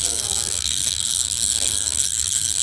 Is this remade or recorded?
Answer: remade